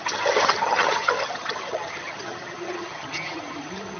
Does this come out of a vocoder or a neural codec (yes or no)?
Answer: yes